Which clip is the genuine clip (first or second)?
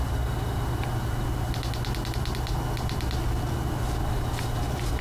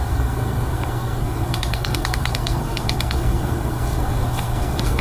first